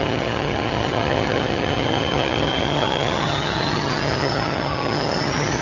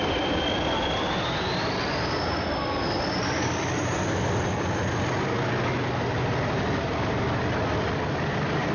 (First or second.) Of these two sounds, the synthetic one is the first